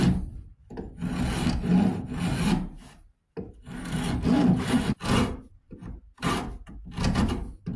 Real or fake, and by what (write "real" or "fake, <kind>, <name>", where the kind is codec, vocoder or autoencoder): real